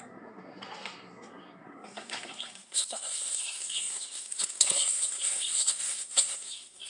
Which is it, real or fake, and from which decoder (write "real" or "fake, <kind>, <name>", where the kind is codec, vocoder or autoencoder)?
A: fake, codec, SNAC